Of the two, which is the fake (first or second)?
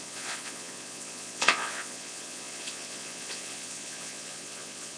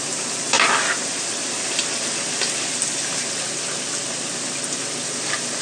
first